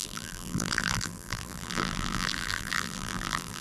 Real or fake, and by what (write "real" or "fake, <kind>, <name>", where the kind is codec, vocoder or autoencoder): fake, vocoder, BigVGAN v2